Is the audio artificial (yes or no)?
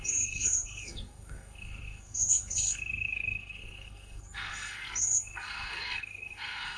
yes